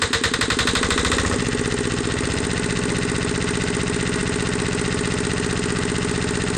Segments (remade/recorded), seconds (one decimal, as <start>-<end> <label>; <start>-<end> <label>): 0.0-6.6 recorded